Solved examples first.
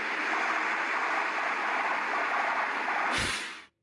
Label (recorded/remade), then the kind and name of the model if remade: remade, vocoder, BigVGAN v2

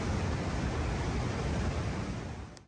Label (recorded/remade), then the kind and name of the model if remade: recorded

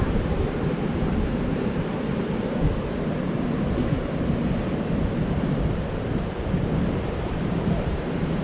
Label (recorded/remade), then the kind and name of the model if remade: remade, vocoder, BigVGAN v2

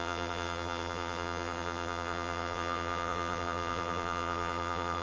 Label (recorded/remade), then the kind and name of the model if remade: remade, vocoder, BigVGAN v2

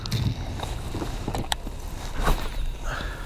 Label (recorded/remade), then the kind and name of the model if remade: remade, vocoder, BigVGAN v2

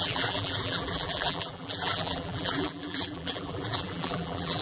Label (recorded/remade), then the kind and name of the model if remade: remade, vocoder, BigVGAN v2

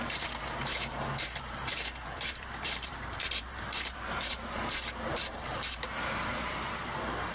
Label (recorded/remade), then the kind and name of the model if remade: remade, vocoder, BigVGAN v2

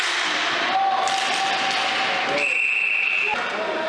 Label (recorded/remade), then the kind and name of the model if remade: recorded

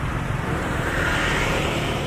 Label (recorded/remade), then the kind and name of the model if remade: remade, vocoder, BigVGAN v2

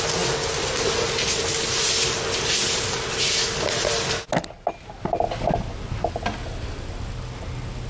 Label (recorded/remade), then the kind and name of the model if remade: recorded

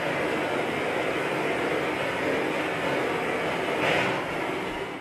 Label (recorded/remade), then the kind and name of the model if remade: recorded